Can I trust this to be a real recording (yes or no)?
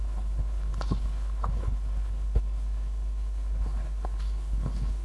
no